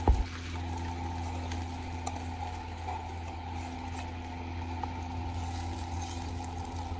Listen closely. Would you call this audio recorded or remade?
recorded